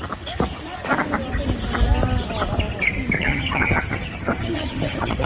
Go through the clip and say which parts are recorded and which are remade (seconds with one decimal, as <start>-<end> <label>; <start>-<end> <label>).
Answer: 0.0-3.2 recorded; 3.2-5.3 remade